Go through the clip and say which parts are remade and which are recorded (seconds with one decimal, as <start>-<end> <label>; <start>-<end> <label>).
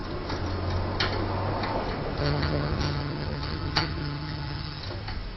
0.0-2.2 recorded; 2.2-4.8 remade; 4.8-5.4 recorded